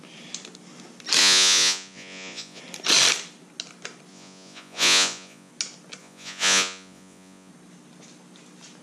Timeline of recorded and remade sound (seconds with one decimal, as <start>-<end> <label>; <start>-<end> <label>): 0.0-1.2 recorded; 1.2-2.6 remade; 2.6-4.1 recorded; 4.1-5.5 remade; 5.5-6.0 recorded; 6.0-7.5 remade; 7.5-8.8 recorded